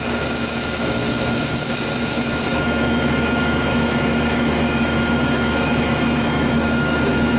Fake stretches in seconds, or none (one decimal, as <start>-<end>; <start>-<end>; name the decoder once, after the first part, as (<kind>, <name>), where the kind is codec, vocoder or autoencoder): 0.0-7.4 (autoencoder, DAC-VAE)